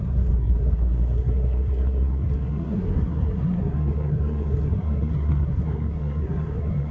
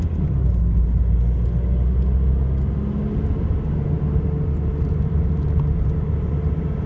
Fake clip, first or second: first